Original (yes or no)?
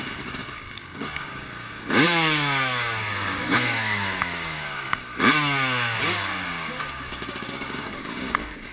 no